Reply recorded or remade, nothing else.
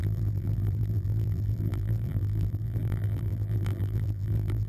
remade